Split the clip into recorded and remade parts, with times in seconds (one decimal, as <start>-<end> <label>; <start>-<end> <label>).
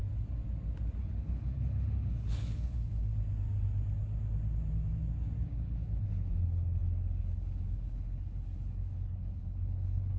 0.0-1.0 recorded; 1.0-3.1 remade; 3.1-5.4 recorded; 5.4-10.2 remade